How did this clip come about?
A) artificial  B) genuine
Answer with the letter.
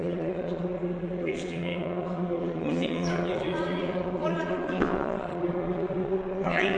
A